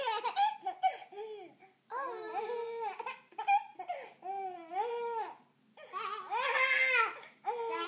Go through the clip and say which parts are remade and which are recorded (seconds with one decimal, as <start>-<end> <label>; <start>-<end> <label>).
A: 0.0-7.9 recorded